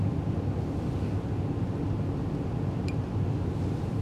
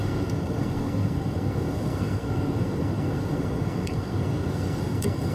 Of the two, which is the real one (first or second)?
first